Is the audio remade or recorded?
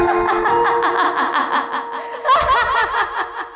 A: recorded